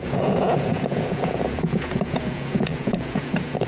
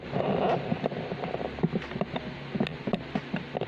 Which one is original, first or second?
second